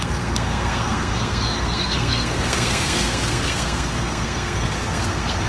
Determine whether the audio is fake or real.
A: fake